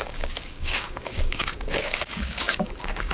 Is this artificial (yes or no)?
yes